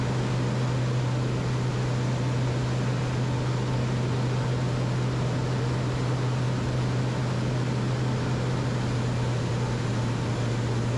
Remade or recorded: recorded